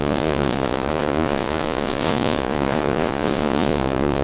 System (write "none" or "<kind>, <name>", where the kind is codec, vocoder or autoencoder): vocoder, Vocos